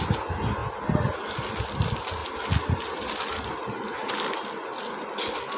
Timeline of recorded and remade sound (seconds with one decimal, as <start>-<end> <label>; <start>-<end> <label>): 0.0-5.6 recorded